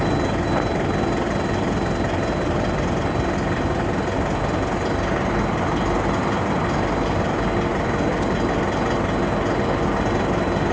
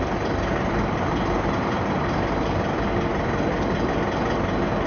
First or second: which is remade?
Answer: second